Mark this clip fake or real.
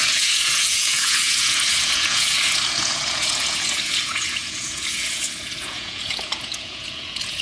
fake